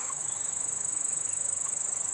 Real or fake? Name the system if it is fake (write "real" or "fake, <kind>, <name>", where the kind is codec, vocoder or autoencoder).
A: fake, autoencoder, DAC-VAE